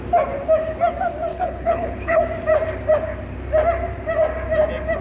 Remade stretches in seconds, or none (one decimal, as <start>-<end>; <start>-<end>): 1.3-2.2